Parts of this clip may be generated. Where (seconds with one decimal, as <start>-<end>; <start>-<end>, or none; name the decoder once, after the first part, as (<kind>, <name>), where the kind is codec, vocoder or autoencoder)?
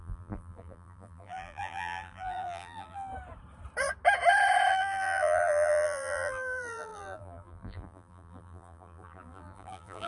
0.0-3.1 (vocoder, BigVGAN v2); 4.7-10.1